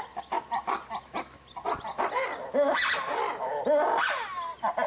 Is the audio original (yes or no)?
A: yes